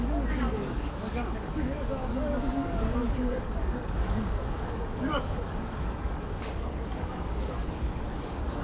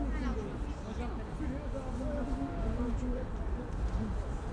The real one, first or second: second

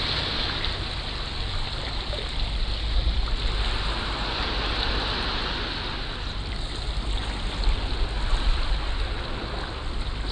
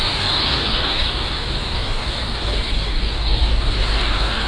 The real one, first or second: first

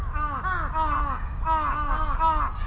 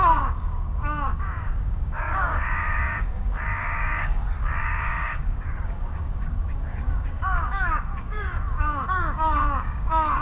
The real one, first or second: first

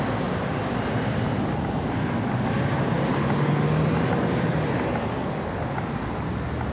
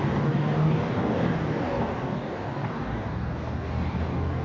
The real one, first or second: first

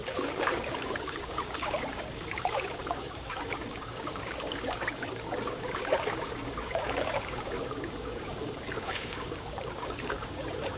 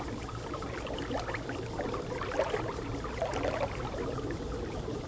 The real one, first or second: second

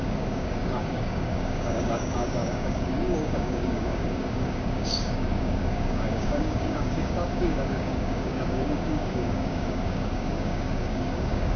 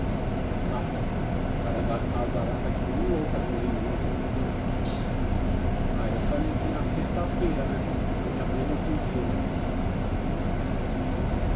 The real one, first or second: second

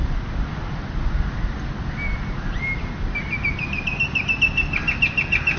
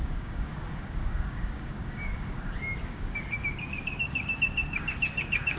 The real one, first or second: first